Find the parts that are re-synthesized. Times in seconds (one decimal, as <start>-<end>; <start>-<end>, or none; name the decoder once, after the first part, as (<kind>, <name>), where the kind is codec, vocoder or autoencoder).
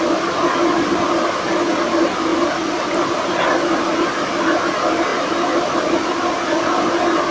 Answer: none